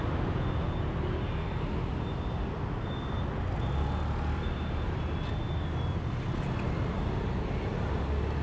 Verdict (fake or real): real